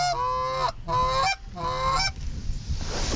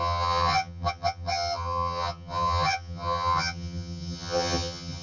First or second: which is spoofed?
second